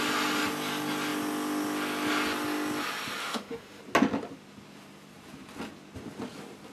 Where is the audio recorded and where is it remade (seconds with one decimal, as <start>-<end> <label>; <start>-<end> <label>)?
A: 0.0-3.2 recorded; 3.2-3.8 remade; 3.8-6.7 recorded